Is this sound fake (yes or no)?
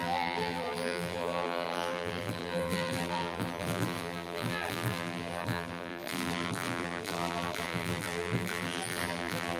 yes